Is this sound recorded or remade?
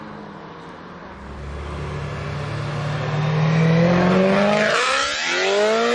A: recorded